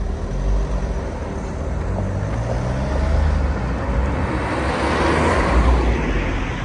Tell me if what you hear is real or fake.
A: real